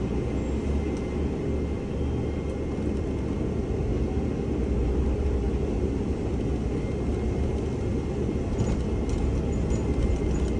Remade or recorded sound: recorded